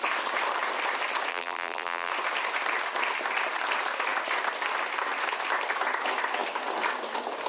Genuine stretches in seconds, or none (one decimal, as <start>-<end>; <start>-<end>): 0.0-1.3; 2.1-7.5